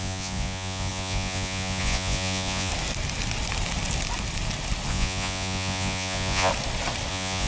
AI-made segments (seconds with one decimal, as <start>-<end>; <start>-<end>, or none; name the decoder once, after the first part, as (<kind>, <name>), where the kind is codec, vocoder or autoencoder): 0.0-2.7 (vocoder, Vocos); 4.9-6.5; 7.1-7.5